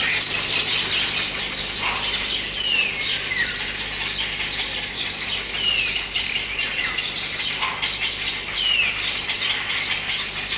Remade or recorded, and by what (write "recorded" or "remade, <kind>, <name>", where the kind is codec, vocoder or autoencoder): recorded